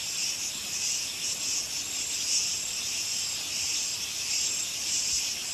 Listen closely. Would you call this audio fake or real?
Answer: real